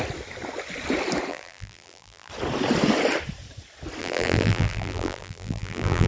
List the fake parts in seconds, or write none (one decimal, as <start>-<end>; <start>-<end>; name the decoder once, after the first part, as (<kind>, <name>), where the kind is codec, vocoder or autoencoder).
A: 1.3-2.3 (vocoder, BigVGAN v2); 4.0-6.1